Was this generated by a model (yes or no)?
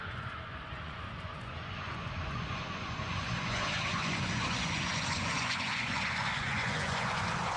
yes